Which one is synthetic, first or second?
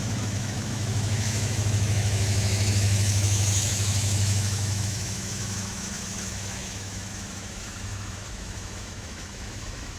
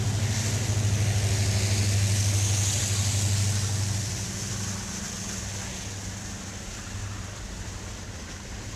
first